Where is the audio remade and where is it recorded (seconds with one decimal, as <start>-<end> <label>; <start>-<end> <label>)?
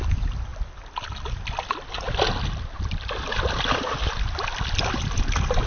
0.0-5.7 recorded